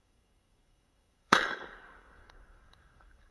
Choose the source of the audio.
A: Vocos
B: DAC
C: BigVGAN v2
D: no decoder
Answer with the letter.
B